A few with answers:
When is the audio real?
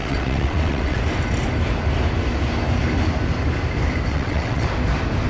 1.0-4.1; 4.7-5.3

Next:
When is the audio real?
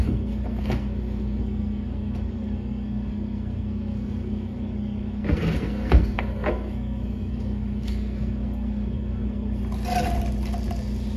9.6-11.2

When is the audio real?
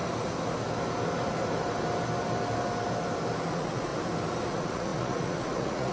0.0-3.5; 3.9-4.5